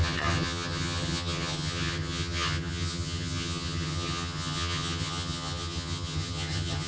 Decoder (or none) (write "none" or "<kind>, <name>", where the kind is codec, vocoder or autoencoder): vocoder, HiFi-GAN